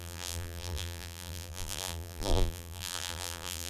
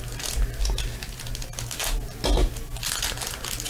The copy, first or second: first